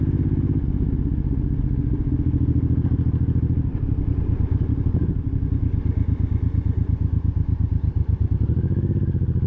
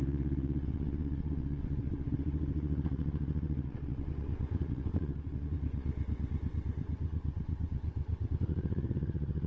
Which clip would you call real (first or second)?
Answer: first